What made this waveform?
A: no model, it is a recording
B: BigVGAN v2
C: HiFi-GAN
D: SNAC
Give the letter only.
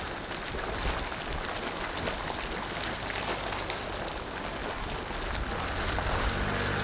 A